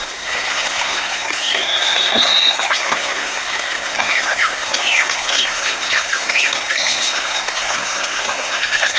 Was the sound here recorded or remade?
remade